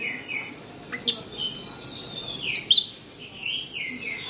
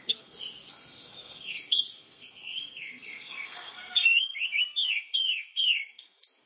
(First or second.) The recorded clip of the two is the first